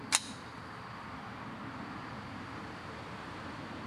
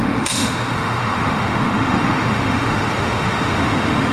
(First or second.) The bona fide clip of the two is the first